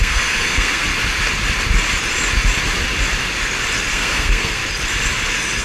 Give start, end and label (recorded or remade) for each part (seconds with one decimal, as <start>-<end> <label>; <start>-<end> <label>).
0.0-0.9 remade; 0.9-3.9 recorded; 3.9-4.6 remade; 4.6-5.6 recorded